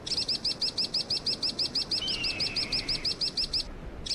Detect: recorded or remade recorded